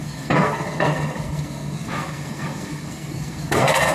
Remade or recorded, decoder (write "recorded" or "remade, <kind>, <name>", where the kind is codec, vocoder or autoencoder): remade, codec, SNAC